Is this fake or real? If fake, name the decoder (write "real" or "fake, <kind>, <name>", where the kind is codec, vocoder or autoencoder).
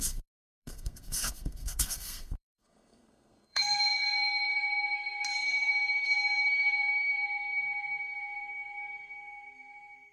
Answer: fake, codec, SNAC